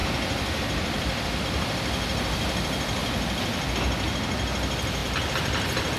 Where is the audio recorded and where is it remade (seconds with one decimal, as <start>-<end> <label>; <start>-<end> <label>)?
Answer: 0.0-1.4 remade; 1.4-3.0 recorded; 3.0-3.7 remade; 3.7-5.0 recorded; 5.0-6.0 remade